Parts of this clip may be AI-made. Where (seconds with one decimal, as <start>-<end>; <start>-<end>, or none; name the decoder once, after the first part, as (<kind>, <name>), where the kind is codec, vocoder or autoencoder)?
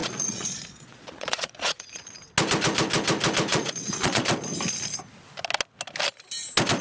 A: 0.0-2.2 (vocoder, Vocos); 3.5-4.2